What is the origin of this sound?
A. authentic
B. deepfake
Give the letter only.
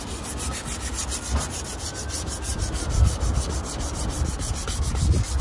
A